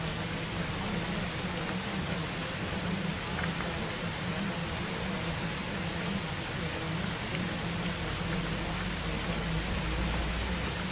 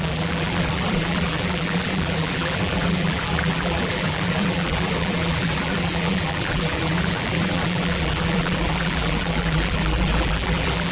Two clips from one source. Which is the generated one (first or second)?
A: second